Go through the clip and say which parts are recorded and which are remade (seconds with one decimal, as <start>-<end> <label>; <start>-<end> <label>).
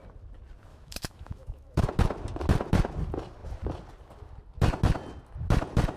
0.0-0.7 recorded; 0.7-1.9 remade; 1.9-6.0 recorded